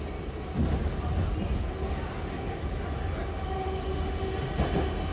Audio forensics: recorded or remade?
recorded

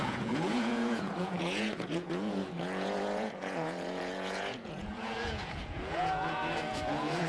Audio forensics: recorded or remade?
remade